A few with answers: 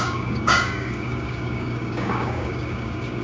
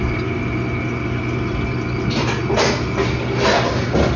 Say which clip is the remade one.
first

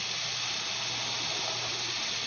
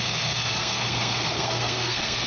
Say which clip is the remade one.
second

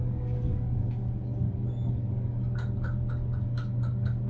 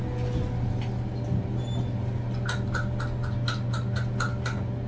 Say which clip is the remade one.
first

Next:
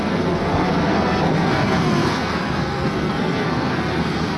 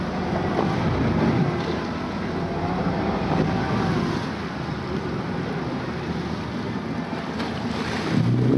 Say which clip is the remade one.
first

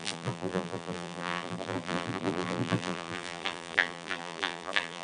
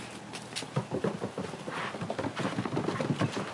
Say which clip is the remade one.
first